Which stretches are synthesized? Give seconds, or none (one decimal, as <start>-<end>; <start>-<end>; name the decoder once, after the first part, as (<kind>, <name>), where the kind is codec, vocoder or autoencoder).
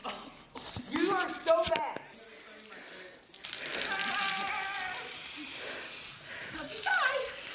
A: 6.4-6.9 (codec, DAC)